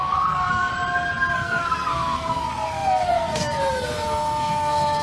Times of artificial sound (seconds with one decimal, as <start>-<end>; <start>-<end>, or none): 0.0-0.7; 1.3-5.0